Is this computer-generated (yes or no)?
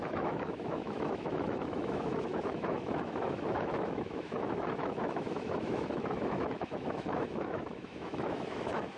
yes